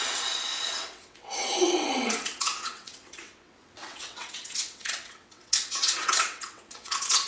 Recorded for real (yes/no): no